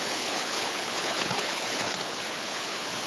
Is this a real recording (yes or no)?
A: no